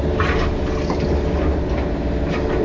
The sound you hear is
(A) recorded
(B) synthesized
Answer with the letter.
A